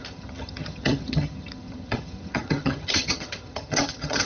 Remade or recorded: remade